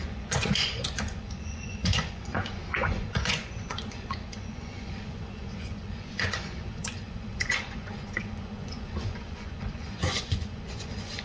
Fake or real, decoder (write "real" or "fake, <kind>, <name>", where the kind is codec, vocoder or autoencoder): fake, vocoder, Vocos